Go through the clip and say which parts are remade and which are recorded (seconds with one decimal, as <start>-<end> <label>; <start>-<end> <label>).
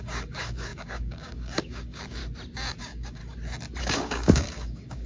0.0-2.2 remade; 2.2-2.8 recorded; 2.8-3.2 remade; 3.2-3.8 recorded; 3.8-5.1 remade